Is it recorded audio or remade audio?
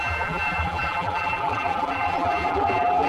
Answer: remade